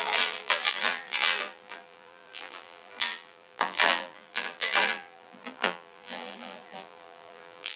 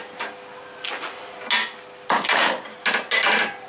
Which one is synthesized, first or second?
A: first